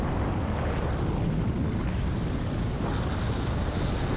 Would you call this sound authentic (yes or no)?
yes